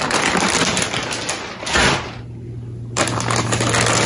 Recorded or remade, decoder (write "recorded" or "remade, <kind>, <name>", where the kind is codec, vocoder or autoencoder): recorded